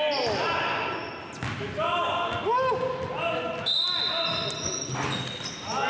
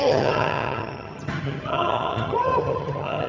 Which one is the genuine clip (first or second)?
first